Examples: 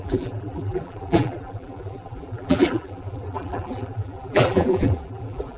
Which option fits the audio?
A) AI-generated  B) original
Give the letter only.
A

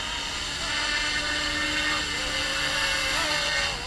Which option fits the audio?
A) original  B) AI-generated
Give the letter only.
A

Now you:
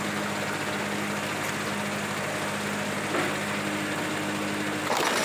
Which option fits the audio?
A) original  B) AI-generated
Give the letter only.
A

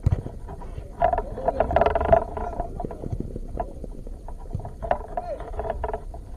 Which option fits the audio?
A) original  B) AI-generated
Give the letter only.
B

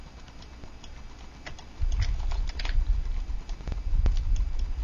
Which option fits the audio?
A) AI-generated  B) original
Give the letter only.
B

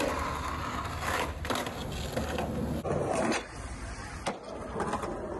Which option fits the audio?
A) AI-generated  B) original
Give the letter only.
B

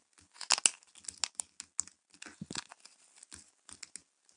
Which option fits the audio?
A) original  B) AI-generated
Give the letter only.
A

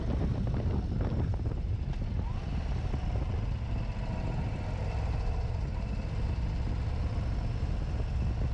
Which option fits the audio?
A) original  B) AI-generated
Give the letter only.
A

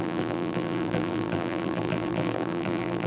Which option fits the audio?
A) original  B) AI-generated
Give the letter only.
B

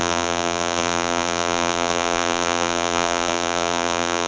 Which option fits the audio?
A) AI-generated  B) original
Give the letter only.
A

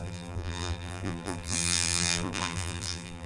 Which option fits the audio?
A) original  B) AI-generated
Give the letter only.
B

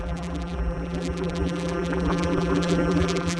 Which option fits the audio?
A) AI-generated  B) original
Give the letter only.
A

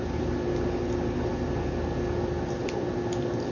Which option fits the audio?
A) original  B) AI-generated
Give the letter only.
A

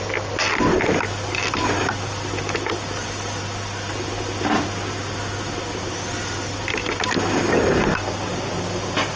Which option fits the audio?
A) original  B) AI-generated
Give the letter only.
A